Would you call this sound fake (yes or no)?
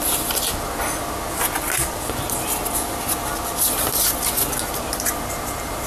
no